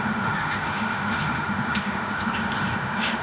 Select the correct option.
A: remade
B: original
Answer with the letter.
A